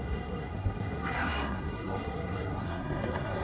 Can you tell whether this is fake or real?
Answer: fake